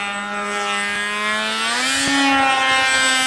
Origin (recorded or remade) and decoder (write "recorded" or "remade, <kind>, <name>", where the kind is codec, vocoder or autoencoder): recorded